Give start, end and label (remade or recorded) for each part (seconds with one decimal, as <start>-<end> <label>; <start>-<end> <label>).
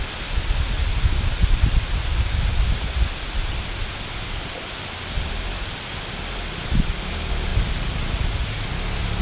0.0-9.2 recorded